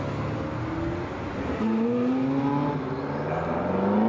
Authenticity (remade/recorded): recorded